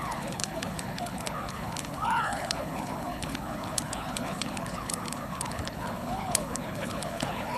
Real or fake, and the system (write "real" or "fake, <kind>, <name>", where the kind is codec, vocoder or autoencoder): fake, codec, HILCodec